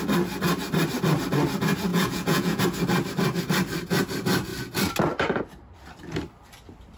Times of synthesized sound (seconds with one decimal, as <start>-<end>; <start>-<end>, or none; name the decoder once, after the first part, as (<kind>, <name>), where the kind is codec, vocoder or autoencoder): 1.9-2.6 (vocoder, Vocos)